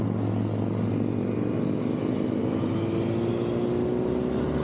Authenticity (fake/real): real